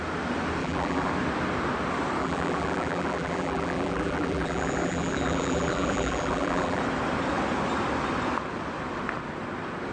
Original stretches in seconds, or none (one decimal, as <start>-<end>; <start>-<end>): 0.0-0.6; 1.1-2.2; 6.8-9.9